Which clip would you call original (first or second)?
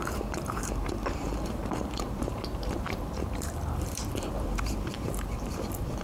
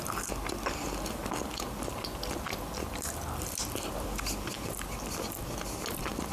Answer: second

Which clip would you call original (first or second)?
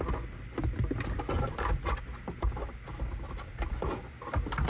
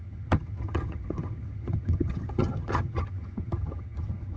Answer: first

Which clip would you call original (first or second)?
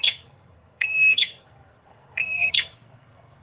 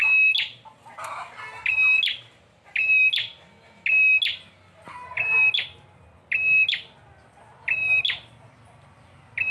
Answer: second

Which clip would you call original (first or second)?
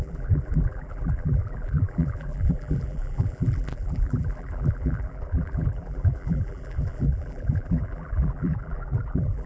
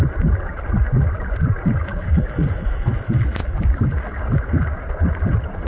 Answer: second